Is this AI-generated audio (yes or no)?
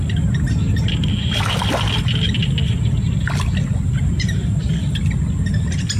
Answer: no